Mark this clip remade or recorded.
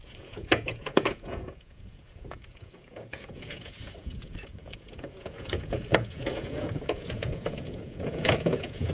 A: remade